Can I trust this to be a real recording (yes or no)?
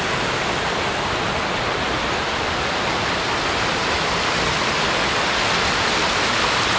yes